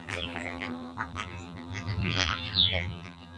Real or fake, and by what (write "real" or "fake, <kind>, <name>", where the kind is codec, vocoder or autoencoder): fake, vocoder, BigVGAN v2